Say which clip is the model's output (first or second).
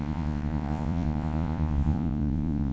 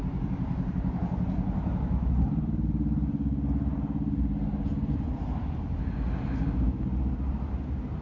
first